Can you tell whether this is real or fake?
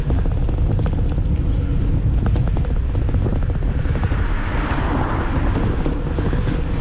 real